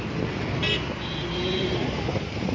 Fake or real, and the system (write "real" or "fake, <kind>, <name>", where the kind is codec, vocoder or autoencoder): real